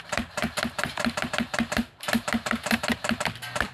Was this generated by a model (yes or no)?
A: yes